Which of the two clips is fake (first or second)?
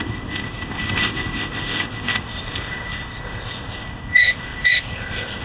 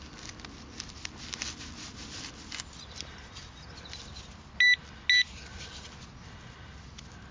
first